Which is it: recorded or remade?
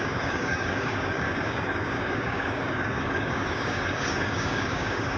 remade